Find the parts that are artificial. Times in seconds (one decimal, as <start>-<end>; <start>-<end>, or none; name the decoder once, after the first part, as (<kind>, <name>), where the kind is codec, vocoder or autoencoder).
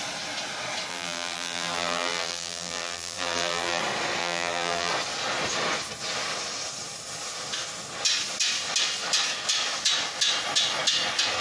0.9-3.8 (vocoder, BigVGAN v2); 4.2-4.9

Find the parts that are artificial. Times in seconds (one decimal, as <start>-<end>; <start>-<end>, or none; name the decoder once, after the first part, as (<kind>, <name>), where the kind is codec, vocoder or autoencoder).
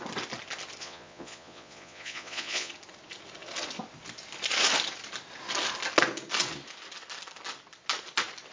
0.8-2.7 (vocoder, Vocos)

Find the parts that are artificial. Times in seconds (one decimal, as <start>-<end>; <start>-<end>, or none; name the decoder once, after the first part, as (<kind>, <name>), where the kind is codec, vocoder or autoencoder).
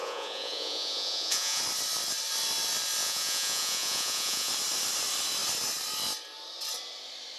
0.0-1.6 (vocoder, Vocos); 3.0-4.5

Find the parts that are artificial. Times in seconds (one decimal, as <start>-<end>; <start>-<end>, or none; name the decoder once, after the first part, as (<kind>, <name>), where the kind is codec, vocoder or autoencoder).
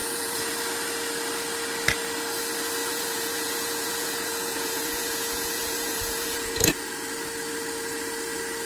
0.0-0.5 (vocoder, Vocos); 2.8-6.5